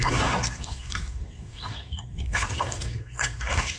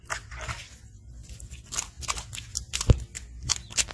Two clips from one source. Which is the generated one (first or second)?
first